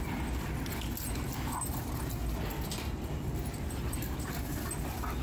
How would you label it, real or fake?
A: real